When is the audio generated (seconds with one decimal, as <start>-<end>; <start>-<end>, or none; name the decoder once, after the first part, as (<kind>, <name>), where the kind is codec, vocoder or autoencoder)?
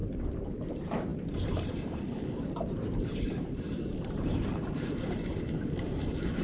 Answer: 0.7-6.4 (vocoder, BigVGAN v2)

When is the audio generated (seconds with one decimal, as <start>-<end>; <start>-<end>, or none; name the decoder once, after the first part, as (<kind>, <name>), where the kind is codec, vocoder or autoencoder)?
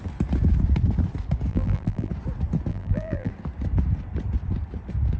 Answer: 1.5-2.1 (vocoder, BigVGAN v2); 2.7-3.3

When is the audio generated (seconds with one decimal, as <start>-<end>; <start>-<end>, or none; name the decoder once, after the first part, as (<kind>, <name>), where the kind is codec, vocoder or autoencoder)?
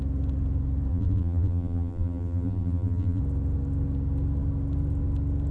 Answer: 0.9-3.2 (vocoder, BigVGAN v2)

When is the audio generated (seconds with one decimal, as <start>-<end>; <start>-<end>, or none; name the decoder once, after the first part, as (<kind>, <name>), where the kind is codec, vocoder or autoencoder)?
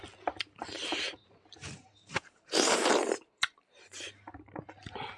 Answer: 0.9-4.0 (vocoder, BigVGAN v2)